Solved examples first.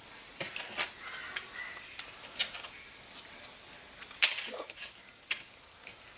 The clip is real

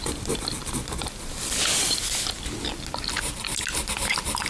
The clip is real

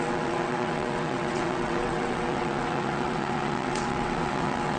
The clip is fake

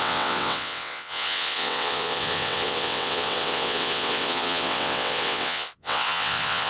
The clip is fake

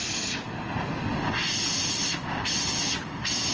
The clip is real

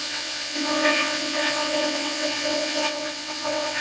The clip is fake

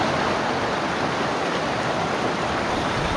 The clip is real